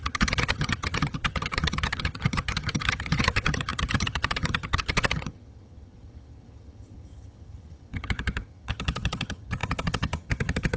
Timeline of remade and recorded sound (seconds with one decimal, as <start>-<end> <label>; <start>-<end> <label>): 0.0-10.8 remade